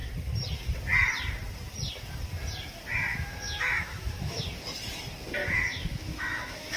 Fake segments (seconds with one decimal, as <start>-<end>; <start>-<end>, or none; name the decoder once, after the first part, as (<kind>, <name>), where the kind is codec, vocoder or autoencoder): 3.1-4.4 (autoencoder, DAC-VAE); 5.4-6.8